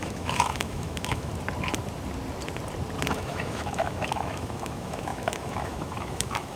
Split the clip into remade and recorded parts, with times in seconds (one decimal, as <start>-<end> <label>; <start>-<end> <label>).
0.0-1.3 remade; 1.3-3.1 recorded; 3.1-6.6 remade